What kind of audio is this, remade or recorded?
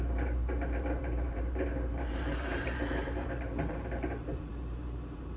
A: remade